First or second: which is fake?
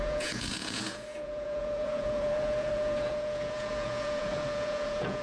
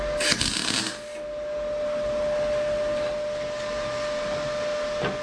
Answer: first